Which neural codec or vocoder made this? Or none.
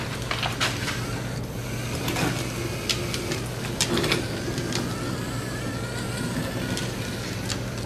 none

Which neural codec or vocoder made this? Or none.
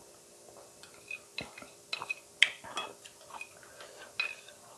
none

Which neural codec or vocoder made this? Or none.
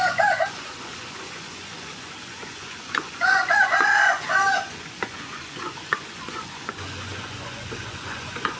vocoder, Vocos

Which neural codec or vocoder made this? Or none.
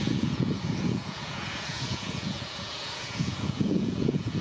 vocoder, Vocos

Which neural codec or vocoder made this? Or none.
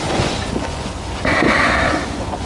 vocoder, Vocos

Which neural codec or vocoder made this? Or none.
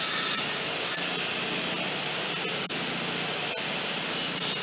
none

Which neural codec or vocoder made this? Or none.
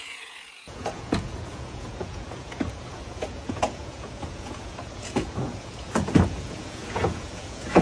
vocoder, Vocos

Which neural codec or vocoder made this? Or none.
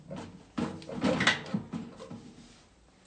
none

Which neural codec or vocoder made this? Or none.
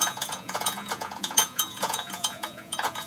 vocoder, Vocos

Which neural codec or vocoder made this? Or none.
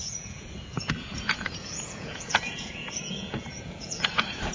vocoder, Vocos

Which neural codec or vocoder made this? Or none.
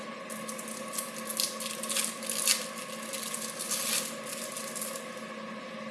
none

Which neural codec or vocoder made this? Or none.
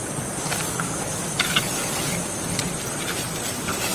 none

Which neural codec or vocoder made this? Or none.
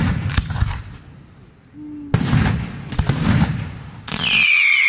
none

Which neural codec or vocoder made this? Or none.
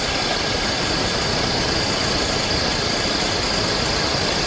none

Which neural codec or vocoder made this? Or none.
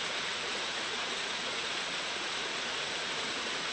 vocoder, Vocos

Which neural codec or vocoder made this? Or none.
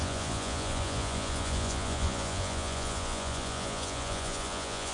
vocoder, Vocos